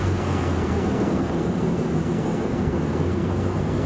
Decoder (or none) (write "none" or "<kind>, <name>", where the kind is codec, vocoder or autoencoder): codec, SNAC